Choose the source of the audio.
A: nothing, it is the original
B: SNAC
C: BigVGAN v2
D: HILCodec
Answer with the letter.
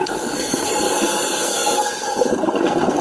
B